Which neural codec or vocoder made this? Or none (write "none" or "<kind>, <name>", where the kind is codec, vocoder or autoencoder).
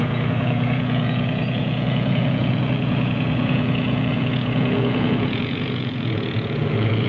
vocoder, Vocos